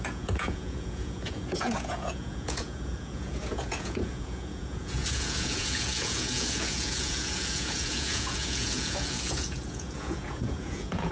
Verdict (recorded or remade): remade